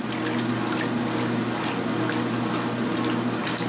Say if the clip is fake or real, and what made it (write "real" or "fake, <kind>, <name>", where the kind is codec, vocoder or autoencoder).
real